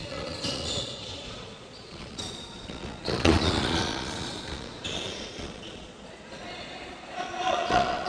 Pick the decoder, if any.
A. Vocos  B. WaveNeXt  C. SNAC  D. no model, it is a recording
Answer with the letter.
A